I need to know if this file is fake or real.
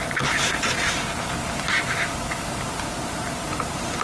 fake